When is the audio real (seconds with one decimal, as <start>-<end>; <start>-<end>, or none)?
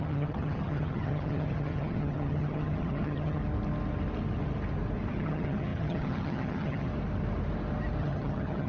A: 3.4-5.1; 6.9-8.0